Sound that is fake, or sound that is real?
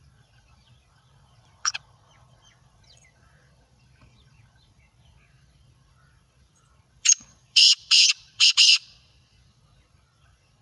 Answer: fake